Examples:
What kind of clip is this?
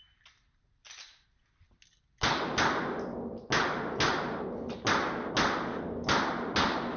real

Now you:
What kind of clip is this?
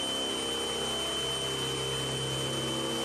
real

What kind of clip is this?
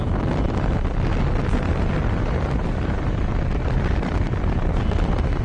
real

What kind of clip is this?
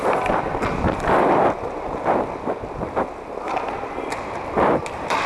real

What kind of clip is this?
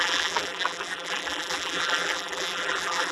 fake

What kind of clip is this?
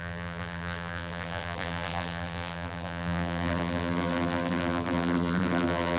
fake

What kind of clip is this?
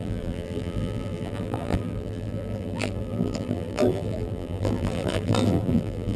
fake